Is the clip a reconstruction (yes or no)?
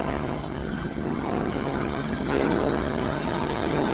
yes